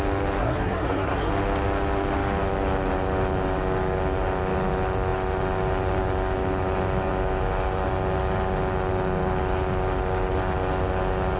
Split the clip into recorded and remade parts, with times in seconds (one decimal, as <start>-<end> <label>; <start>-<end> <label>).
0.0-0.4 recorded; 0.4-1.3 remade; 1.3-11.4 recorded